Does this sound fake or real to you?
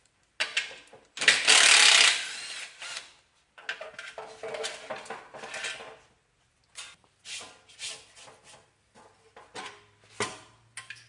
real